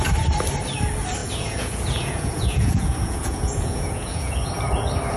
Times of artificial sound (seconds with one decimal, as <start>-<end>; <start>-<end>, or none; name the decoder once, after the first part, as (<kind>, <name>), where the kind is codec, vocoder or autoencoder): 1.2-4.3 (vocoder, Vocos)